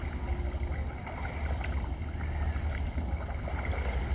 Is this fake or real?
fake